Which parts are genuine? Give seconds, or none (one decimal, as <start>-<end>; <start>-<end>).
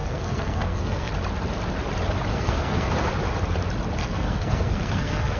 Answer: 1.1-2.3; 2.9-4.0